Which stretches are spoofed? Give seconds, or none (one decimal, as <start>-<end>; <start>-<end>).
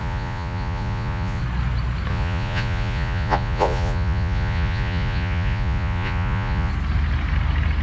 0.0-1.4; 2.1-6.7